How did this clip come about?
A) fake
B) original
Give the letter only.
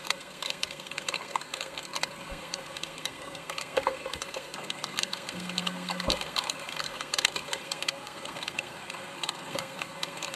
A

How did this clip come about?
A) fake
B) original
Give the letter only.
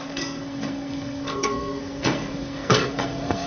A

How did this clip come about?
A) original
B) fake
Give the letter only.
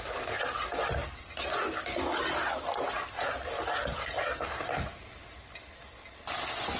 A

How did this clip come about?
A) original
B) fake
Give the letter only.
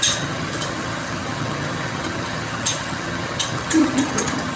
B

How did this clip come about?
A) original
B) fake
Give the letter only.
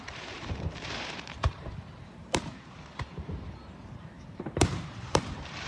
B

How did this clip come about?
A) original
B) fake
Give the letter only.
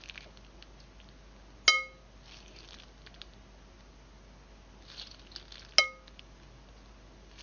A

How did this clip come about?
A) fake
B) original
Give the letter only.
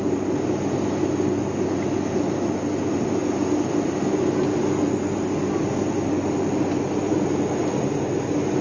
B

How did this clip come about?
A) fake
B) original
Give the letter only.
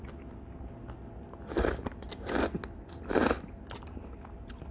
B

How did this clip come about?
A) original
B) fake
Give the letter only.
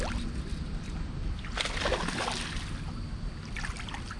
A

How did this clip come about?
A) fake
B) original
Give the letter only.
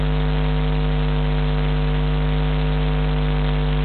B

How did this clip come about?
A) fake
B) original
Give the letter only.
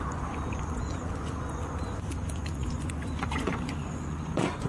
A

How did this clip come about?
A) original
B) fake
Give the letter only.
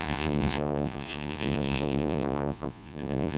B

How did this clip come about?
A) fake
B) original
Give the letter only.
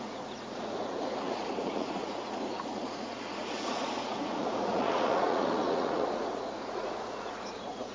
A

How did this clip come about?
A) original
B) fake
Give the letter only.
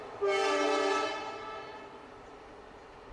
A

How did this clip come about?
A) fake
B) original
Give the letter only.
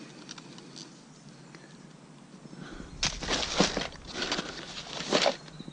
B